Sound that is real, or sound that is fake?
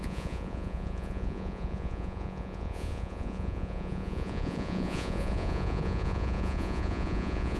fake